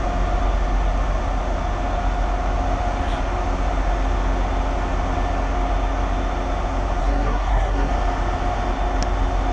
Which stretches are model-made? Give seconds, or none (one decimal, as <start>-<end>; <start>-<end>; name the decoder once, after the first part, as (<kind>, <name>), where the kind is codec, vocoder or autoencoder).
7.0-7.9 (codec, SNAC)